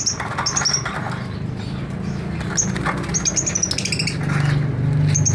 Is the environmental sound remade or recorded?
recorded